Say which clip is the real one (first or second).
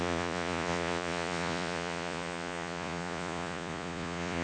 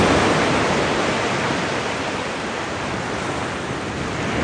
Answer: second